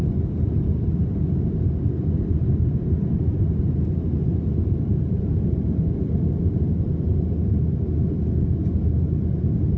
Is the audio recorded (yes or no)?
yes